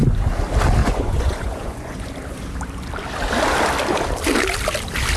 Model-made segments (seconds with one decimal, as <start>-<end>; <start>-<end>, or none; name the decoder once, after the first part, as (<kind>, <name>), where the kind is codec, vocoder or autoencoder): 0.8-2.1 (vocoder, Vocos)